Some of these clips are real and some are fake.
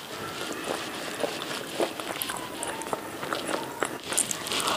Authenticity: real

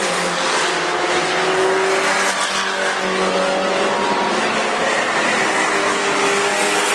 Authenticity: real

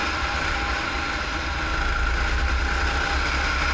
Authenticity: real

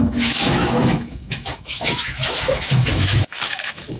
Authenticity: fake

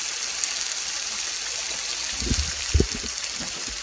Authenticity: real